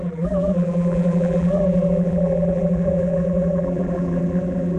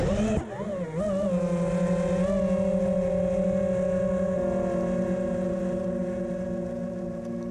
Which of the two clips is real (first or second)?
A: second